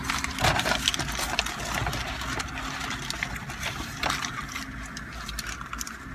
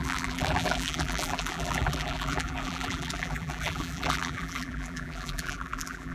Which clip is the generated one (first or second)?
second